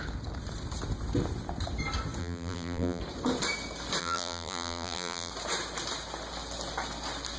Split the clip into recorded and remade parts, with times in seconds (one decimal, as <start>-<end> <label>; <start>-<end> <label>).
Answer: 0.0-2.2 recorded; 2.2-3.0 remade; 3.0-4.0 recorded; 4.0-5.3 remade; 5.3-7.4 recorded